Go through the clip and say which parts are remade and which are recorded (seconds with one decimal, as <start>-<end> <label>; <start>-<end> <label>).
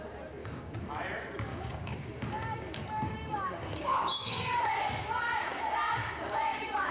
0.0-0.4 recorded; 0.4-0.9 remade; 0.9-1.5 recorded; 1.5-5.6 remade; 5.6-6.0 recorded; 6.0-6.9 remade